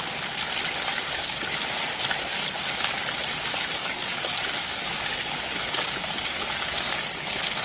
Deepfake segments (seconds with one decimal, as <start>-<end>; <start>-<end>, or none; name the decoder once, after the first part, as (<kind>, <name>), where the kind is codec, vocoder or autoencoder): 0.9-1.5 (codec, DAC); 3.8-6.9